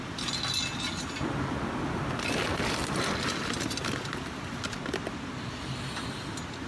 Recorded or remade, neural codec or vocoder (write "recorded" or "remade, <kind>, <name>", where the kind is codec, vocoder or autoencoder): recorded